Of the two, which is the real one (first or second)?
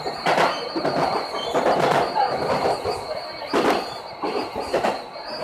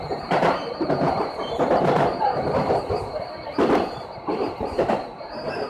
first